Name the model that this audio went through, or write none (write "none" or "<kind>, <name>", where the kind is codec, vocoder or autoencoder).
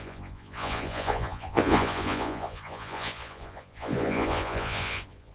vocoder, Vocos